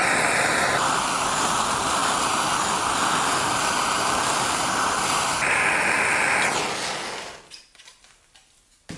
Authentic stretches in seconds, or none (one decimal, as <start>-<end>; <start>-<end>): 0.0-9.0

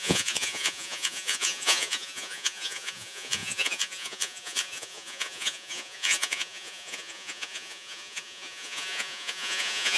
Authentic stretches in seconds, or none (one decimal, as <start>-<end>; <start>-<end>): none

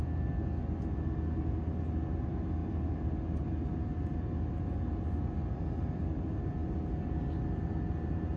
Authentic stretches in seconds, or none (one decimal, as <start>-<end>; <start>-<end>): 0.0-8.4

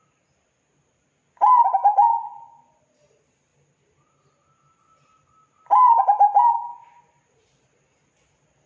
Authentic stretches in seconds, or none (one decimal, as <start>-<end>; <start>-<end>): 0.0-8.7